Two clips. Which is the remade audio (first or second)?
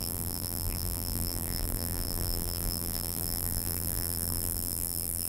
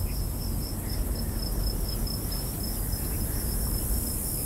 first